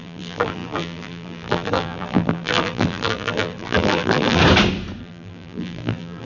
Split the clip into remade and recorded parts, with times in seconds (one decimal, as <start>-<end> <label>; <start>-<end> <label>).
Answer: 0.0-4.4 remade; 4.4-5.0 recorded; 5.0-6.2 remade